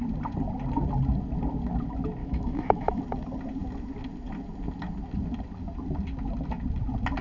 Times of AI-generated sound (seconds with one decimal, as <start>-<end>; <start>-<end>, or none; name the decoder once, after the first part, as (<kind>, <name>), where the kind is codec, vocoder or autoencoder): 2.2-3.0 (autoencoder, DAC-VAE)